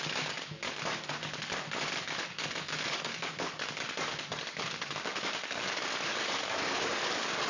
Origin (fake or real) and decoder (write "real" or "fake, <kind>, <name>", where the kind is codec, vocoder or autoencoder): fake, codec, DAC